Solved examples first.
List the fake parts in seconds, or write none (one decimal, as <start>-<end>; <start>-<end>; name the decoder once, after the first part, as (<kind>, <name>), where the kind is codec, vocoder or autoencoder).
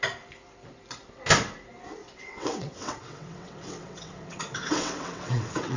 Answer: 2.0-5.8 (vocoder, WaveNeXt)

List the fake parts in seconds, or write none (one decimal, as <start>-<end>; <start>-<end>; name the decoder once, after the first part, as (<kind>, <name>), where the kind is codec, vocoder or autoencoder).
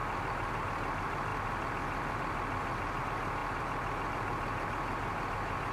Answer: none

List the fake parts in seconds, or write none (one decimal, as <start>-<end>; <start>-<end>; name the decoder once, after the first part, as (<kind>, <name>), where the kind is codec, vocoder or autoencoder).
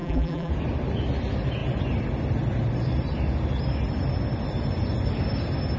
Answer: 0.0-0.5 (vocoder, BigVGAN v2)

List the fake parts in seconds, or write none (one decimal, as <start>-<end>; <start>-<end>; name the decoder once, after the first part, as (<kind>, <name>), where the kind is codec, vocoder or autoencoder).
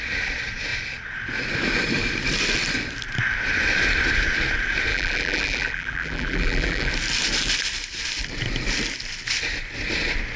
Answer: 4.9-6.9 (vocoder, BigVGAN v2)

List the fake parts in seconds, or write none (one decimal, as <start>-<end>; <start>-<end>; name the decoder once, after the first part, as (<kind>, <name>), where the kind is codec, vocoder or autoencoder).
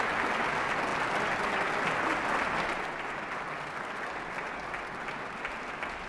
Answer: none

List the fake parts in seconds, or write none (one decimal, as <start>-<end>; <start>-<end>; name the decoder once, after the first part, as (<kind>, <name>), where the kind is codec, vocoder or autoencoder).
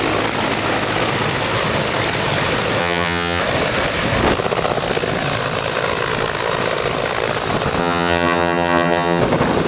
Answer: 2.8-3.4 (vocoder, HiFi-GAN); 7.8-9.2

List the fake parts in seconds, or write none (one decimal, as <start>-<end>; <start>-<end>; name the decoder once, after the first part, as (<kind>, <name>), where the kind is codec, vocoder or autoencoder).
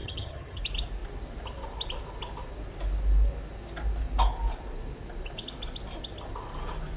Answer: 0.0-0.6 (vocoder, HiFi-GAN)